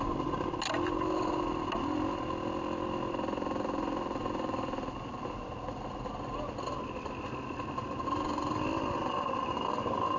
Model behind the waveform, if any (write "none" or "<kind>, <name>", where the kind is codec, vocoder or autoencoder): none